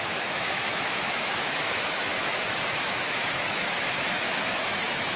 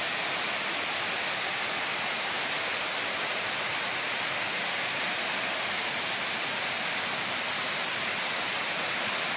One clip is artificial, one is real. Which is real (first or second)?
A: second